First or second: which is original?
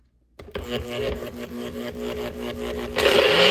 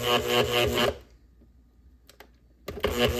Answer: second